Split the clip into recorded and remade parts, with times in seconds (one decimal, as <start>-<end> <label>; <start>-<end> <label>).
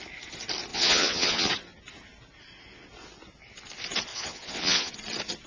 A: 0.0-0.7 recorded; 0.7-1.5 remade; 1.5-4.1 recorded; 4.1-4.9 remade; 4.9-5.5 recorded